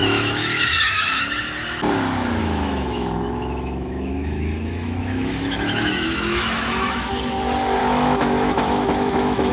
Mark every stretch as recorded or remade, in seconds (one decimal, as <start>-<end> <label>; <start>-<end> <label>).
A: 0.0-1.2 remade; 1.2-2.4 recorded; 2.4-7.1 remade; 7.1-7.8 recorded; 7.8-9.5 remade